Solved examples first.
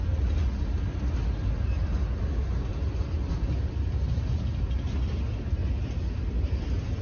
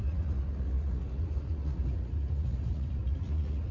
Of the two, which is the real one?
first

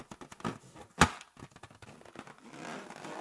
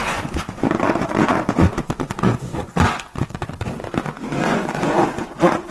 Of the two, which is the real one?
first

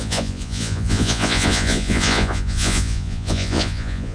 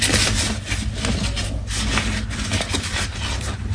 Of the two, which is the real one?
second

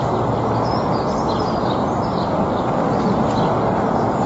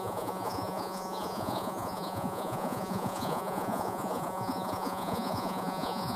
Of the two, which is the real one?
first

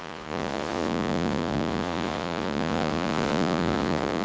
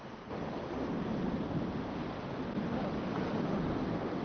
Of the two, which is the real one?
second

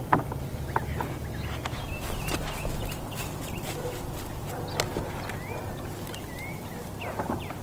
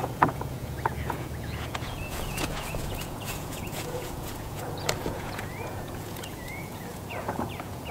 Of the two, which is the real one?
first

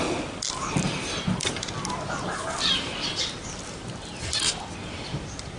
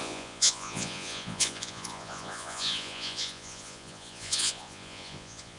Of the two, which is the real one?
first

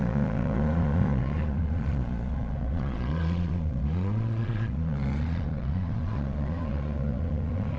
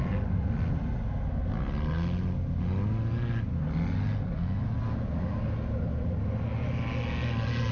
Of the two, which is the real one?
second